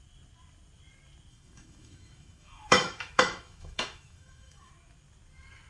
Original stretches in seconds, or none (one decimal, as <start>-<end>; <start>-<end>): 0.0-1.3; 4.7-5.7